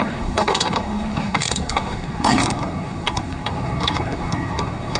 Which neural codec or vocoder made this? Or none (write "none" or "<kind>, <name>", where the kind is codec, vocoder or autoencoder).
codec, SNAC